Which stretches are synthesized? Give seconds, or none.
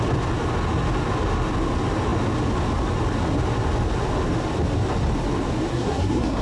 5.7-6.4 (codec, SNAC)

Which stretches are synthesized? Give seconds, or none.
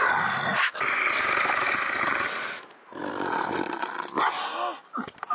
none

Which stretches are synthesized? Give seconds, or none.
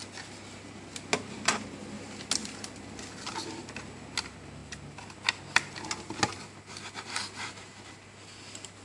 2.4-3.7 (vocoder, BigVGAN v2)